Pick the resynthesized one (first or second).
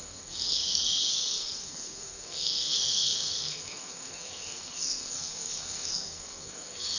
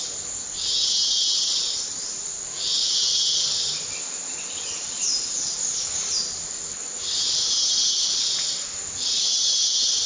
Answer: first